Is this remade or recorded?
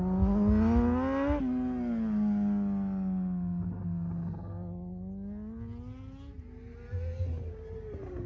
recorded